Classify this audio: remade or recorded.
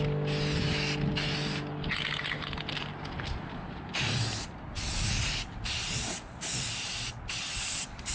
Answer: recorded